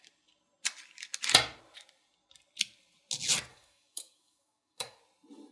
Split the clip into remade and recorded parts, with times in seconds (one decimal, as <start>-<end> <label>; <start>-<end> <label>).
0.0-3.5 recorded; 3.5-5.0 remade; 5.0-5.5 recorded